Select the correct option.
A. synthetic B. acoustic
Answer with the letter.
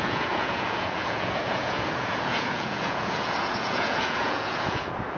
A